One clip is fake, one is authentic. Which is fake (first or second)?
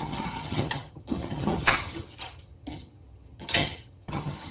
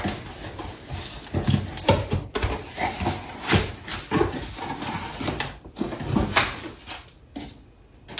first